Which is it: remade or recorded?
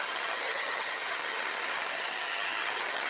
remade